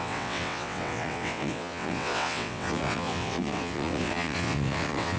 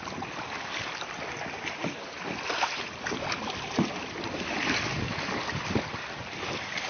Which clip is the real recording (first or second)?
second